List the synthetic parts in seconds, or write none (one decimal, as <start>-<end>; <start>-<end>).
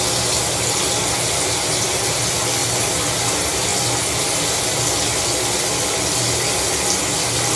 none